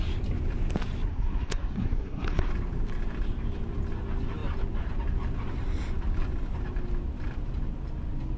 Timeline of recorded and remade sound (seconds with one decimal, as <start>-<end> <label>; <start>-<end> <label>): 0.0-1.1 recorded; 1.1-2.5 remade; 2.5-8.4 recorded